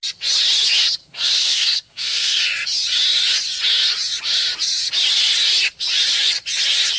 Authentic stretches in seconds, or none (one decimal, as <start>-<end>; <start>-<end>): 0.0-1.0; 2.4-7.0